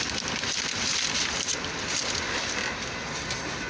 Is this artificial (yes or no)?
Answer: no